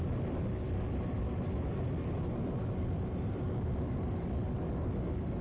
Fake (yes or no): yes